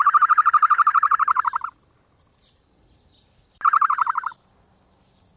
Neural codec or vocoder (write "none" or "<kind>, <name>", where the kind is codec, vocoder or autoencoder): none